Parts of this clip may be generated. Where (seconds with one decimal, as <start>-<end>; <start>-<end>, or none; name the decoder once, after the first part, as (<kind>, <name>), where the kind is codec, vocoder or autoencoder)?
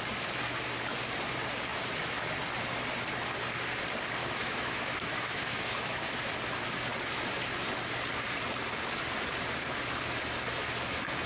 4.2-6.0 (autoencoder, DAC-VAE)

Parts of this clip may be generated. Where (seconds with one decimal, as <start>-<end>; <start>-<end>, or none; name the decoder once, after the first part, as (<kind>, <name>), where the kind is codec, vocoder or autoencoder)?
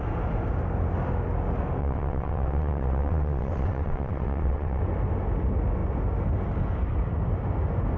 1.8-4.8 (vocoder, WaveNeXt)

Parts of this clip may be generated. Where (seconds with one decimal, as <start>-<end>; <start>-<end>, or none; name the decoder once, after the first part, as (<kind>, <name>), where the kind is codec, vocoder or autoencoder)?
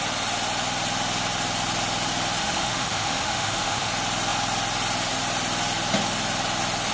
2.4-3.9 (autoencoder, DAC-VAE)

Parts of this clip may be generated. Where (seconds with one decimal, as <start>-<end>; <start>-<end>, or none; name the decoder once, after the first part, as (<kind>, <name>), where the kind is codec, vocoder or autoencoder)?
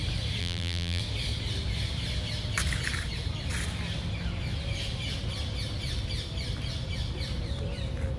0.4-1.0 (vocoder, BigVGAN v2)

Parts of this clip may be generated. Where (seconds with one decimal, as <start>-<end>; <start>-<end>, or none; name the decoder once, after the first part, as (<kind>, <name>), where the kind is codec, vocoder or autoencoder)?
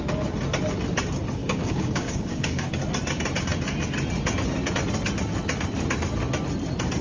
1.4-2.7 (codec, DAC)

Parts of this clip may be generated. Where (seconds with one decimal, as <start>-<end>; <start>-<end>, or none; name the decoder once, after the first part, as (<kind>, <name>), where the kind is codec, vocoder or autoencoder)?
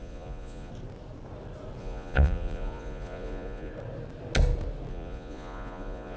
0.0-0.7 (vocoder, Vocos); 1.8-3.7; 4.9-6.2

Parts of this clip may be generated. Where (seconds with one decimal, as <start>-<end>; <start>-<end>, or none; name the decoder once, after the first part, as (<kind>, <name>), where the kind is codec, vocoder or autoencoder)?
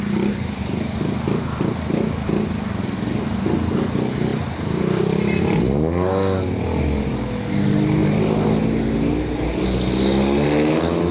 8.0-8.6 (vocoder, BigVGAN v2)